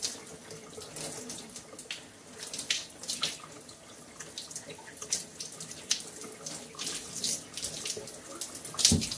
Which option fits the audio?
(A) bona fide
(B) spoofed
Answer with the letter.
A